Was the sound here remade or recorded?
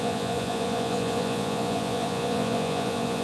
remade